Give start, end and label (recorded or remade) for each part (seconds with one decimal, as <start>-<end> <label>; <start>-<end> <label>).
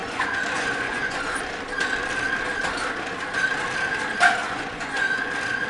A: 0.0-1.4 remade; 1.4-4.4 recorded; 4.4-5.3 remade; 5.3-5.7 recorded